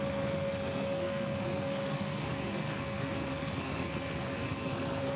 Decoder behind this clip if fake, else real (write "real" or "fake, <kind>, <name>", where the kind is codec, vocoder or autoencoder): fake, codec, SNAC